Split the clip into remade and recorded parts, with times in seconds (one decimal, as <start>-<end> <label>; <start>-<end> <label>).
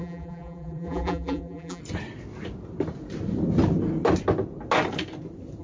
0.0-1.8 remade; 1.8-5.6 recorded